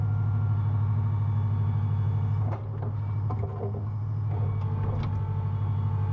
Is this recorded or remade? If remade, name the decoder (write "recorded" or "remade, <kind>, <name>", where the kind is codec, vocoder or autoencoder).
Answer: recorded